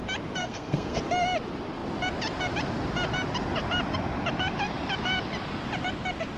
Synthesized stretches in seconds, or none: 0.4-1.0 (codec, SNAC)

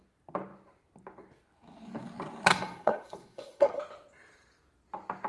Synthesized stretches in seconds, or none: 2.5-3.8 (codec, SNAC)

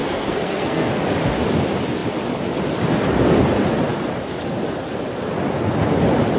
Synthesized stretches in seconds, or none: 0.0-1.0 (codec, SNAC)

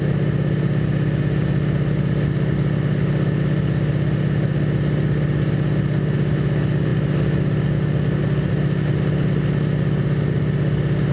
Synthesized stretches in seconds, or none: none

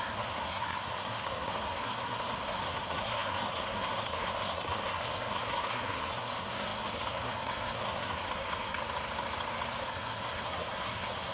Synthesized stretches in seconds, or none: 0.0-8.8 (codec, SNAC); 9.8-11.3